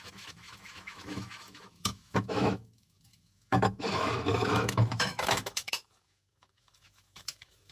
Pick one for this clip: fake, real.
fake